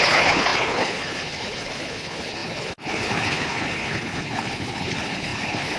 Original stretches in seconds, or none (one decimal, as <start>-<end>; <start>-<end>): none

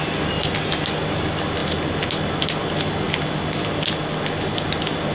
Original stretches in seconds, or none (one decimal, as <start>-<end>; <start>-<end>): 0.0-5.1

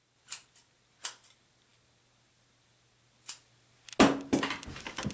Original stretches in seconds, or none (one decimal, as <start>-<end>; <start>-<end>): 0.0-5.1

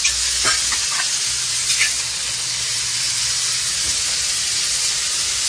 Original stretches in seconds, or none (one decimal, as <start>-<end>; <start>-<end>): 0.0-5.5

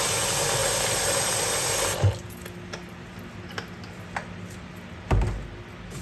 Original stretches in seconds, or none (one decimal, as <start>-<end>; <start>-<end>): 0.0-6.0

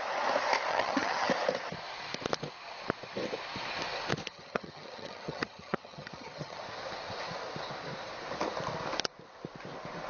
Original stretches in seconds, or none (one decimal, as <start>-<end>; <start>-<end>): 0.0-0.7; 1.3-4.3; 6.6-10.1

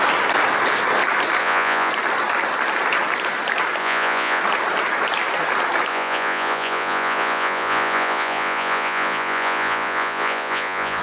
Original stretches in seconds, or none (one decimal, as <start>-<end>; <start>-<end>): 0.0-1.4; 1.9-3.8; 4.4-5.9

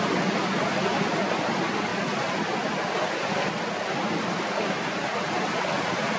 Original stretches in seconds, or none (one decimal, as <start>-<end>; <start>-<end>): 0.0-6.2